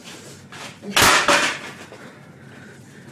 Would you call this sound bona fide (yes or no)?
yes